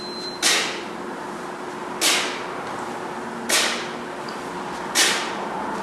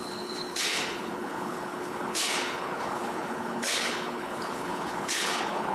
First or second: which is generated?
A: second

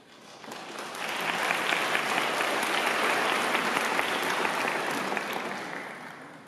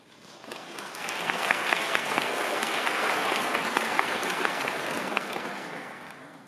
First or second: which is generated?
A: second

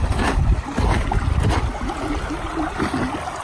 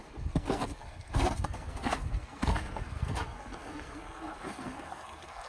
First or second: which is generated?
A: second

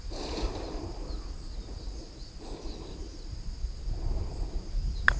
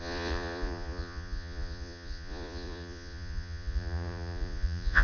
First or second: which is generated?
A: second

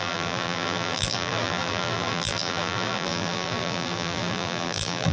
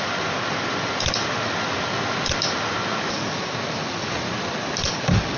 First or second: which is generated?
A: first